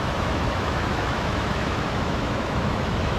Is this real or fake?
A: fake